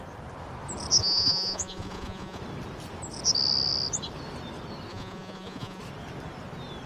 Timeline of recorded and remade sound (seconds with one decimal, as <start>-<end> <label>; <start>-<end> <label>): 0.0-1.0 recorded; 1.0-2.4 remade; 2.4-4.9 recorded; 4.9-5.8 remade; 5.8-6.9 recorded